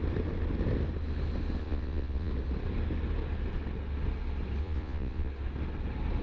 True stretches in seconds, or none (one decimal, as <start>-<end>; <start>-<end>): 0.0-1.6; 2.3-4.6; 5.3-6.2